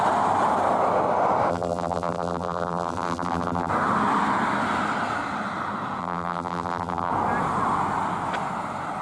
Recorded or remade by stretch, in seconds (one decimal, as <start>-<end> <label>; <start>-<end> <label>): 0.0-1.5 recorded; 1.5-3.7 remade; 3.7-6.0 recorded; 6.0-7.1 remade; 7.1-9.0 recorded